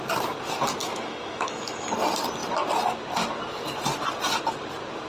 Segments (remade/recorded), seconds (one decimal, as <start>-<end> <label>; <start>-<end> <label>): 0.0-0.8 recorded; 0.8-1.9 remade; 1.9-5.1 recorded